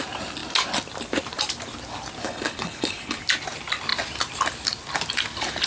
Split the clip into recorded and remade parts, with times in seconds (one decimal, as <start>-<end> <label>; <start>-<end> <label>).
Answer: 0.0-2.2 recorded; 2.2-3.2 remade; 3.2-5.7 recorded

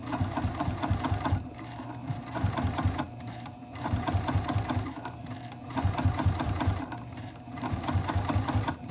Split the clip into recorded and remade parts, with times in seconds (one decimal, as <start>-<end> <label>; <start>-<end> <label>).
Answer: 0.0-5.2 remade; 5.2-5.7 recorded; 5.7-8.9 remade

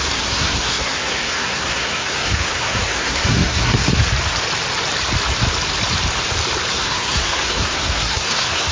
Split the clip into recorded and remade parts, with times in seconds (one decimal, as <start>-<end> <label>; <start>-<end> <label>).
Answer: 0.0-3.9 remade; 3.9-6.7 recorded; 6.7-8.7 remade